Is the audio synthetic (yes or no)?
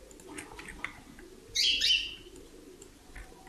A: no